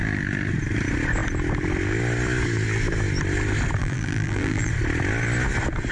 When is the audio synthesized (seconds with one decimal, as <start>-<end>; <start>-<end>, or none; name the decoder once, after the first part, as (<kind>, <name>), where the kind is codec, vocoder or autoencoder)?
3.8-4.7 (vocoder, BigVGAN v2)